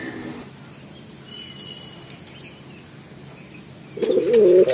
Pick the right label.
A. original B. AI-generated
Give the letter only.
A